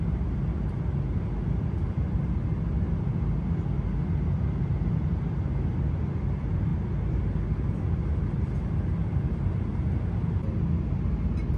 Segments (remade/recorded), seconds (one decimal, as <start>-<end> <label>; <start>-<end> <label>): 0.0-11.6 recorded